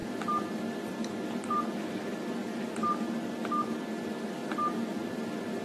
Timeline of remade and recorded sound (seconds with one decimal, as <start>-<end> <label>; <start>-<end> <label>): 0.0-2.4 recorded; 2.4-3.1 remade; 3.1-5.6 recorded